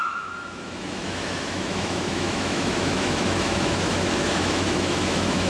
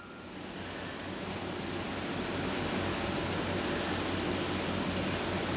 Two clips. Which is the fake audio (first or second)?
first